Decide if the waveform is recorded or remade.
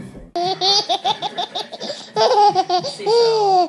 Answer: recorded